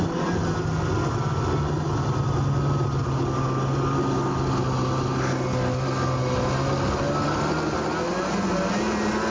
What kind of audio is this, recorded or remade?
recorded